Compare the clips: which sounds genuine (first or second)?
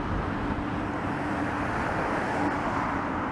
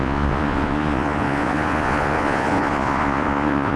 first